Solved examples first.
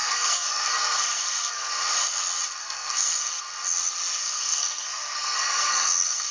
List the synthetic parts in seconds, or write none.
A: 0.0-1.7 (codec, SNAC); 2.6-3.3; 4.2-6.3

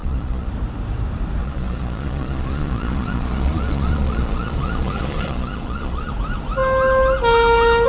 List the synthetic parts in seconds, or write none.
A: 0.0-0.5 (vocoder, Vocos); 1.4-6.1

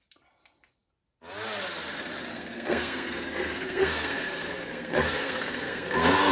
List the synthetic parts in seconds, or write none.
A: 2.3-6.3 (codec, SNAC)